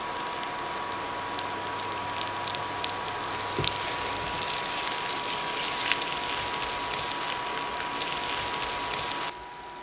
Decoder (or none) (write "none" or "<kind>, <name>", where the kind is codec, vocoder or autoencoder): none